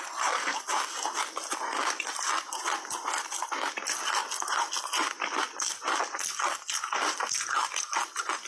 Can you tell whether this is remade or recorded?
recorded